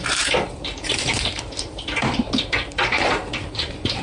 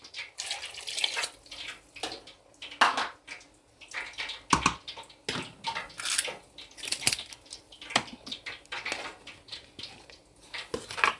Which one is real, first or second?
second